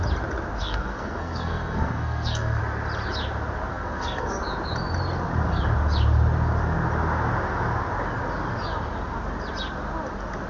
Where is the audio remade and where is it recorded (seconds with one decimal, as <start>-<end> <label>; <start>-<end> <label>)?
0.0-0.6 recorded; 0.6-2.6 remade; 2.6-3.7 recorded; 3.7-4.4 remade; 4.4-10.5 recorded